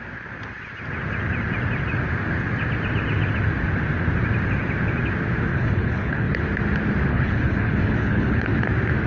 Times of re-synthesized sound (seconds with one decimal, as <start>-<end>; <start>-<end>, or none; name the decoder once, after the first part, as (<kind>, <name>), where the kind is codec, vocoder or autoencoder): 5.5-6.4 (codec, HILCodec); 7.1-8.6